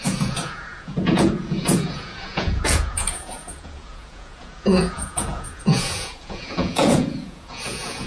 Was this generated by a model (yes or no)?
yes